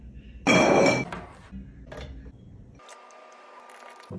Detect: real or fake real